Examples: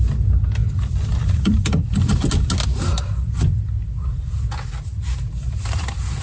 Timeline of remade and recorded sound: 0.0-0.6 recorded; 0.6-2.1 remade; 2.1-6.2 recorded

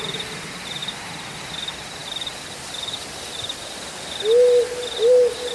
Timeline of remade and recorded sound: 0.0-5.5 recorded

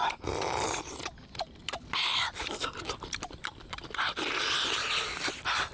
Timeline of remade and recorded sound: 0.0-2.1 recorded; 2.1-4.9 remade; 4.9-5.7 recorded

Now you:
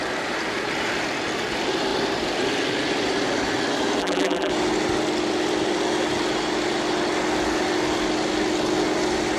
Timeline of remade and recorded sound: 0.0-4.0 recorded; 4.0-4.5 remade; 4.5-9.4 recorded

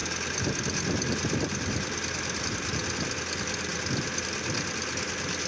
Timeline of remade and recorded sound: 0.0-5.5 recorded

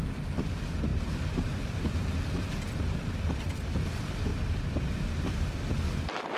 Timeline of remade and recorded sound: 0.0-0.9 recorded; 0.9-2.8 remade; 2.8-4.3 recorded; 4.3-5.4 remade; 5.4-6.4 recorded

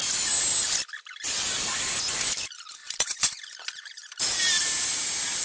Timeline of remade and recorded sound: 0.0-2.8 recorded; 2.8-5.4 remade